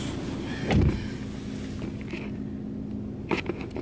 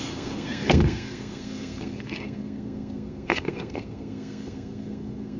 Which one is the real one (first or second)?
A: first